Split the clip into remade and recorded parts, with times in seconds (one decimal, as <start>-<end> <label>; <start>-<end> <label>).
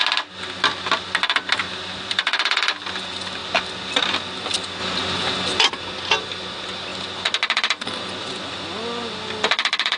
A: 0.0-1.6 recorded; 1.6-3.4 remade; 3.4-4.1 recorded; 4.1-4.8 remade; 4.8-5.6 recorded; 5.6-6.9 remade; 6.9-10.0 recorded